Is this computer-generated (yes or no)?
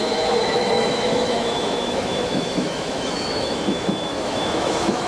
yes